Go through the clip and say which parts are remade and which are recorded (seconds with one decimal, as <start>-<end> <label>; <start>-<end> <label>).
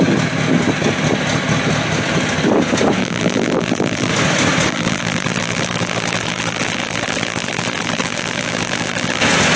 0.0-3.0 recorded; 3.0-4.1 remade; 4.1-4.7 recorded; 4.7-9.2 remade; 9.2-9.6 recorded